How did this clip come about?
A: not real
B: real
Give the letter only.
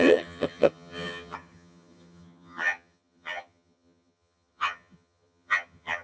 A